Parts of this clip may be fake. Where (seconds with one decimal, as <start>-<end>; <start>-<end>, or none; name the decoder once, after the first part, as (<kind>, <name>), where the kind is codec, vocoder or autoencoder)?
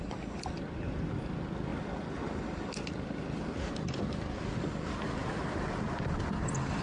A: none